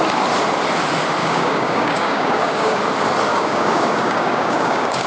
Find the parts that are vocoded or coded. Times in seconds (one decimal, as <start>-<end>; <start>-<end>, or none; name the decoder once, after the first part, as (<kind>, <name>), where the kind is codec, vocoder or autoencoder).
1.2-2.8 (codec, DAC); 3.3-5.1